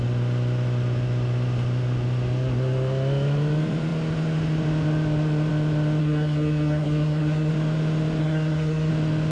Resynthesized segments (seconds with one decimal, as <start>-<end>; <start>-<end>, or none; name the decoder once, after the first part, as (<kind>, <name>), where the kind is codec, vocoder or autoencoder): 6.0-7.5 (codec, SNAC); 8.2-8.9